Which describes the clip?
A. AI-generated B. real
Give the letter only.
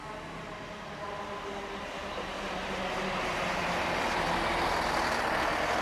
B